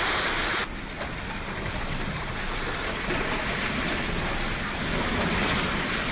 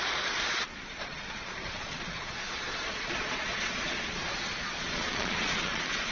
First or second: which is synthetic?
second